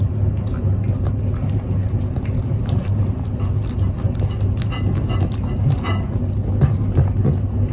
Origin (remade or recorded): recorded